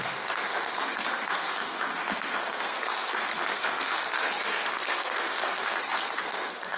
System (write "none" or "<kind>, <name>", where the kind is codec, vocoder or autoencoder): codec, SNAC